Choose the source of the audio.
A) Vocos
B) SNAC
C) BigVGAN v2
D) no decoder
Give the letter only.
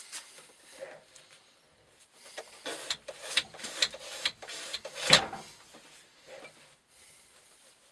C